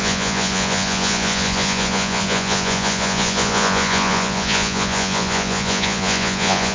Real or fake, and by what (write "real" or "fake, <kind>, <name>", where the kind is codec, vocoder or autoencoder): fake, vocoder, Vocos